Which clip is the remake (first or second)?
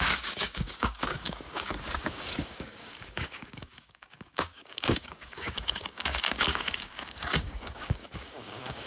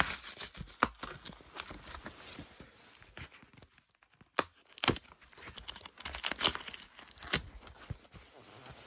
first